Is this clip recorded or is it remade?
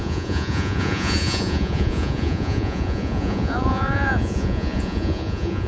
remade